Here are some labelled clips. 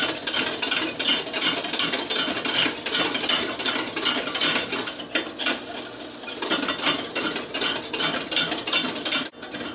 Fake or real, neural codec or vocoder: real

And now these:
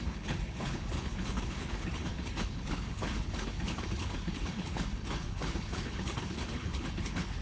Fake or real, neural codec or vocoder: fake, codec, HILCodec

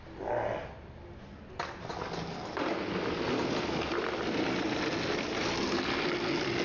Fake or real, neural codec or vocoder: real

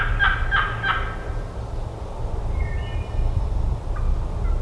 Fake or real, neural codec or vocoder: real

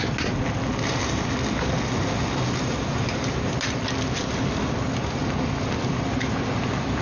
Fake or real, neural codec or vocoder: real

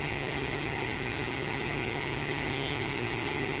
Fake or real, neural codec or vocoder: fake, vocoder, HiFi-GAN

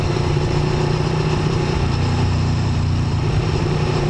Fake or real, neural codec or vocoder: fake, vocoder, BigVGAN v2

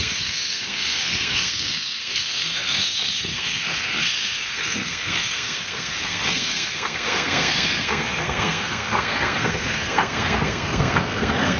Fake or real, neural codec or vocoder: fake, codec, SNAC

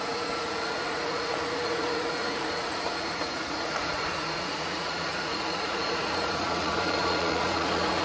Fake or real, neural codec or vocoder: fake, vocoder, Vocos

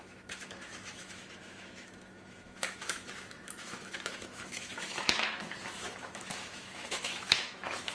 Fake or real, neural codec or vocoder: fake, autoencoder, DAC-VAE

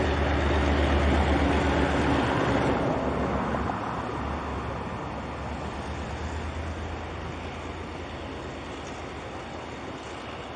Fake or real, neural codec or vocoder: real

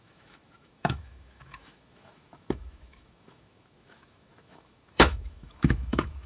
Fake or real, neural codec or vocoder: fake, autoencoder, DAC-VAE